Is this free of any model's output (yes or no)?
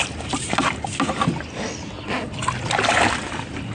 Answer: yes